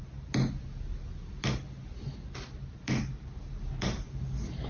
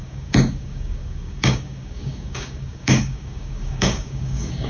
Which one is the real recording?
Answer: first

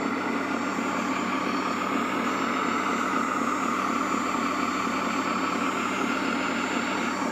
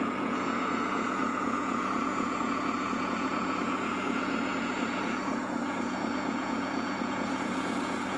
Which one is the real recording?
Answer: first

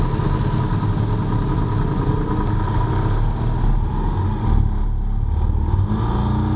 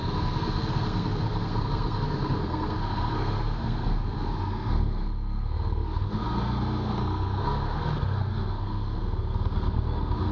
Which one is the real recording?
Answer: first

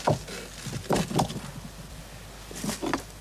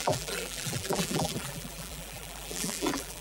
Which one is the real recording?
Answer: first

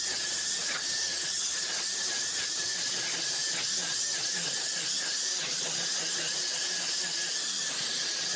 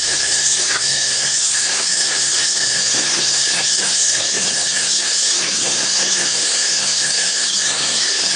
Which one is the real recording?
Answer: first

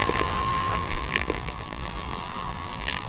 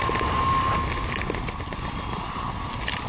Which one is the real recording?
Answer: second